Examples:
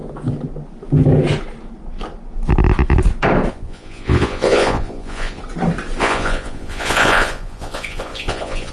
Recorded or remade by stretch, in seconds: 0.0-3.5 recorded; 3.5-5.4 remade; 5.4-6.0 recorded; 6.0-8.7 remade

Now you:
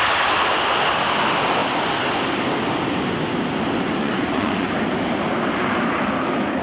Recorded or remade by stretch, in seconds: 0.0-4.0 recorded; 4.0-4.7 remade; 4.7-6.6 recorded